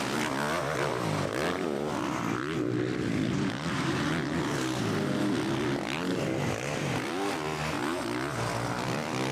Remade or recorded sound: recorded